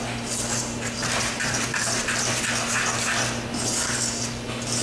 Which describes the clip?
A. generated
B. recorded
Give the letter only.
B